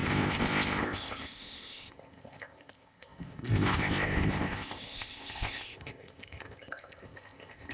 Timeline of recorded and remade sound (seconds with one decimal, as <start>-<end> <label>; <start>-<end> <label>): 0.0-7.7 remade